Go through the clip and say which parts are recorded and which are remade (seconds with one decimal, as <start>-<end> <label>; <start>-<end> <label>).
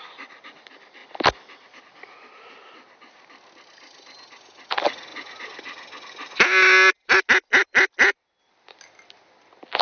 0.0-9.8 recorded